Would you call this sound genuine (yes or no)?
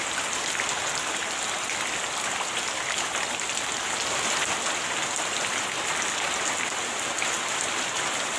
yes